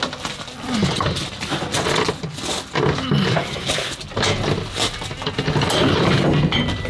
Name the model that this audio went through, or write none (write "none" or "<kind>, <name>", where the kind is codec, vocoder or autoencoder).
none